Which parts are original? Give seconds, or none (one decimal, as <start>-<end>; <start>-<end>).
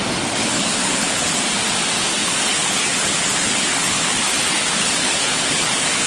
0.0-0.4; 1.4-2.1